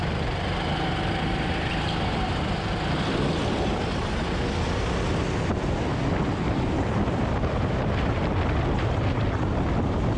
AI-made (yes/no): no